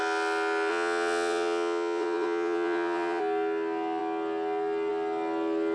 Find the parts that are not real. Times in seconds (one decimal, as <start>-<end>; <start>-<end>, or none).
0.7-3.2